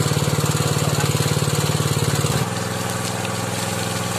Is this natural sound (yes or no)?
yes